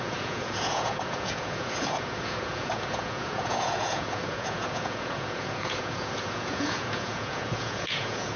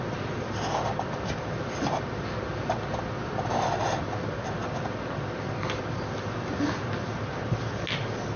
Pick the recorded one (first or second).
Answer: second